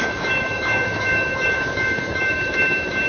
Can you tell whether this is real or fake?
fake